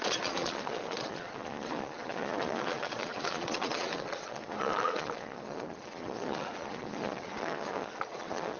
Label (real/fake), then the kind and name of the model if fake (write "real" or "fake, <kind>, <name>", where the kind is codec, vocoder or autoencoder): fake, vocoder, Vocos